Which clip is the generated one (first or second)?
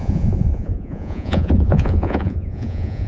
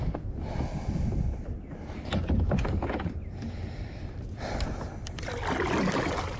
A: first